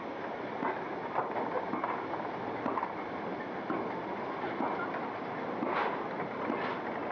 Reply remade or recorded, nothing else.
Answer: recorded